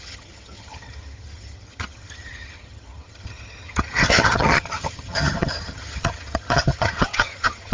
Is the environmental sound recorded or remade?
remade